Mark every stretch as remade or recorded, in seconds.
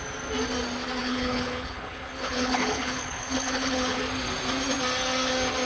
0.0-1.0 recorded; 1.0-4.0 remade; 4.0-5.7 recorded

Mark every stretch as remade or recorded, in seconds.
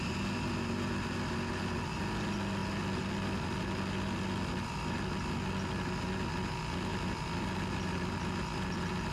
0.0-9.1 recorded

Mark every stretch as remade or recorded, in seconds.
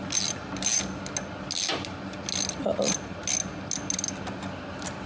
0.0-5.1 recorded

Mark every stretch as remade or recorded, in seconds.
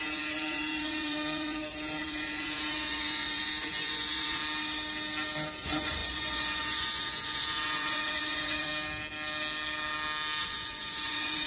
0.0-4.4 remade; 4.4-5.6 recorded; 5.6-8.7 remade; 8.7-10.4 recorded; 10.4-11.5 remade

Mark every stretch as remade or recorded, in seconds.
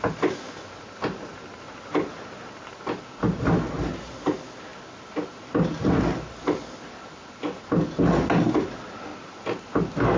0.0-1.3 recorded; 1.3-2.1 remade; 2.1-10.2 recorded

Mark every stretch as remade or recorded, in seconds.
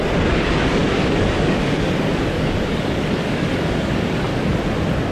0.0-4.3 remade; 4.3-5.1 recorded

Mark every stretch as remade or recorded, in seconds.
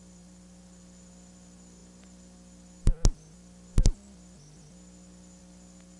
0.0-6.0 recorded